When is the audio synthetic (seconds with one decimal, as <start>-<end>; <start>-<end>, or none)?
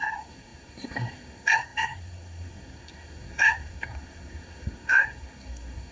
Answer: 0.0-5.9